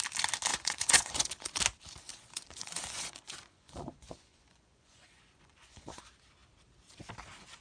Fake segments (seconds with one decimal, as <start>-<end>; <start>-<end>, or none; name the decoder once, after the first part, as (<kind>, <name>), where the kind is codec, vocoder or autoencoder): 0.5-1.6 (vocoder, Vocos); 2.1-6.0